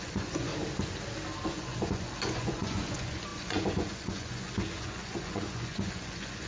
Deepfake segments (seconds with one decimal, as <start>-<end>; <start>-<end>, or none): 0.0-0.5; 1.5-6.5